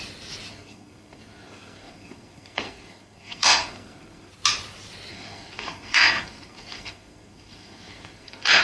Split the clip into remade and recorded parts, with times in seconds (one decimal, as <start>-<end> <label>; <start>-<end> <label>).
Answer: 0.0-0.5 recorded; 0.5-4.3 remade; 4.3-5.1 recorded; 5.1-8.6 remade